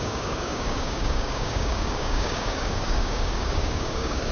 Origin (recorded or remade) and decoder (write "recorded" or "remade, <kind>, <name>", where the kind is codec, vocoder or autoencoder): remade, codec, DAC